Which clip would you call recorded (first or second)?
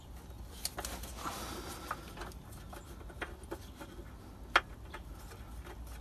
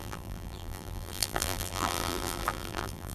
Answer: first